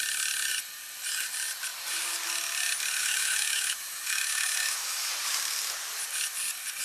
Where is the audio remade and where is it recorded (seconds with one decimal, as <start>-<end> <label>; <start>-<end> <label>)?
0.0-3.0 recorded; 3.0-5.1 remade; 5.1-6.8 recorded